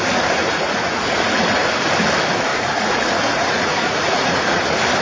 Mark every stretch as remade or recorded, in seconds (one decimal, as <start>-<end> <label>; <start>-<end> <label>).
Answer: 0.0-0.4 recorded; 0.4-1.7 remade; 1.7-2.5 recorded; 2.5-4.6 remade; 4.6-5.0 recorded